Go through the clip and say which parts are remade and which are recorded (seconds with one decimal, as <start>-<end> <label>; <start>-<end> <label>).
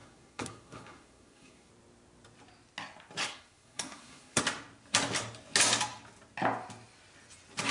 0.0-1.7 remade; 1.7-3.2 recorded; 3.2-4.4 remade; 4.4-7.7 recorded